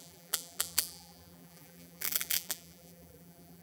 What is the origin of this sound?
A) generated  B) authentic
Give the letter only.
A